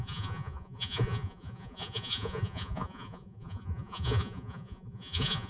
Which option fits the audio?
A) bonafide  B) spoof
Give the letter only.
B